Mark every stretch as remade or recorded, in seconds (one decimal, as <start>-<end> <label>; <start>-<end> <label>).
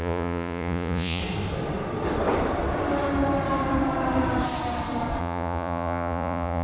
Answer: 0.0-1.2 remade; 1.2-5.2 recorded; 5.2-6.6 remade